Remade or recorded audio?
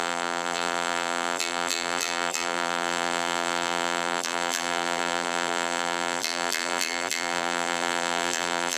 remade